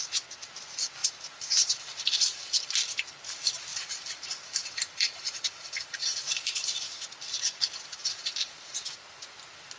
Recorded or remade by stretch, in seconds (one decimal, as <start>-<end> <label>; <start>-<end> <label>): 0.0-1.0 recorded; 1.0-2.7 remade; 2.7-3.7 recorded; 3.7-6.9 remade; 6.9-8.0 recorded; 8.0-8.8 remade; 8.8-9.8 recorded